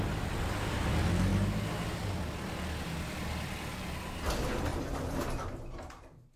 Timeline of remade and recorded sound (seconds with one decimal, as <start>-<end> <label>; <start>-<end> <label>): 0.0-6.4 recorded